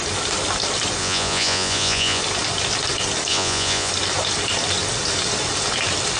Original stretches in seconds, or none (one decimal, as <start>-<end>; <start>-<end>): 0.0-1.0; 2.2-3.3; 3.9-6.2